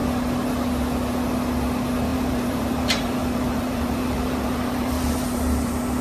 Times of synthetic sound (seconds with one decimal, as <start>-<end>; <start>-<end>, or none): 2.1-6.0